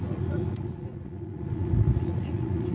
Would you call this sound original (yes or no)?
no